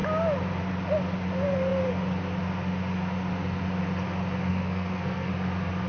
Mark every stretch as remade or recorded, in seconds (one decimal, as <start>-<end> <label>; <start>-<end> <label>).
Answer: 0.0-4.5 recorded; 4.5-5.3 remade; 5.3-5.9 recorded